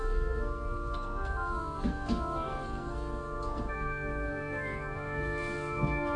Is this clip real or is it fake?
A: fake